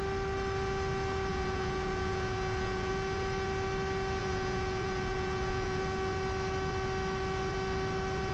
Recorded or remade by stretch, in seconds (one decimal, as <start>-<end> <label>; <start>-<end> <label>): 0.0-1.3 recorded; 1.3-2.9 remade; 2.9-4.2 recorded; 4.2-5.8 remade; 5.8-8.3 recorded